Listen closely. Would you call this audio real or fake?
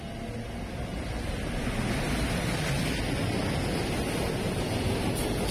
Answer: real